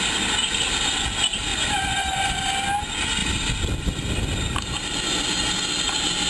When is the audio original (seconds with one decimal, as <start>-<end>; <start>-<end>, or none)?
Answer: 0.0-1.5; 2.3-6.3